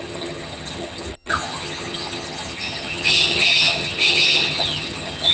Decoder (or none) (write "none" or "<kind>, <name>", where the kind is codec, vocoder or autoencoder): vocoder, HiFi-GAN